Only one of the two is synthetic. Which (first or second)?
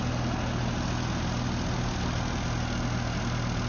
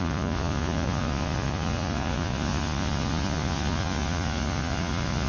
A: second